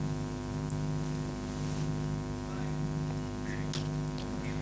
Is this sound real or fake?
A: real